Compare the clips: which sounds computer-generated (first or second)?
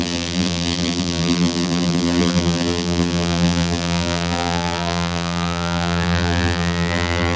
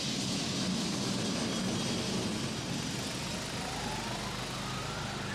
first